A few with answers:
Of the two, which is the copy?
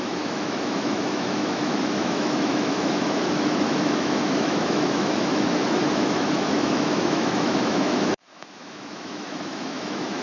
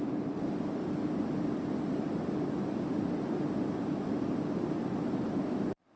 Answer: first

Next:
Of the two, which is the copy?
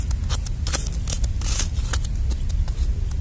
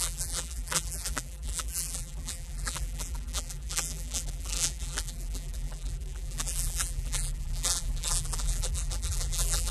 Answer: second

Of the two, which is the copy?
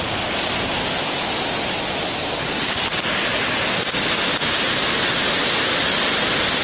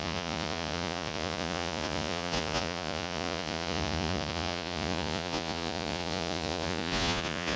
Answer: second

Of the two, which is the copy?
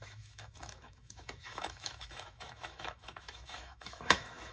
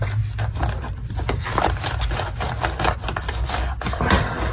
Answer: first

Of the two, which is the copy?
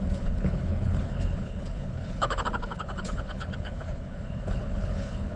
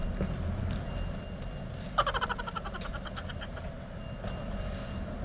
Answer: first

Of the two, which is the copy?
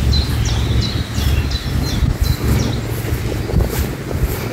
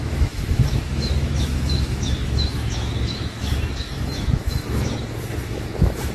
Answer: second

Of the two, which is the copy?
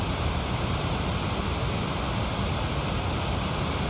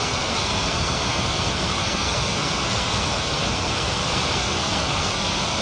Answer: second